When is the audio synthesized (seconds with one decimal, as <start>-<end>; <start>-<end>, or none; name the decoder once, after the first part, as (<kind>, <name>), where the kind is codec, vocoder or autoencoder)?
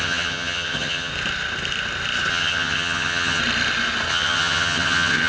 0.0-1.1 (vocoder, HiFi-GAN); 2.3-3.4; 4.1-5.3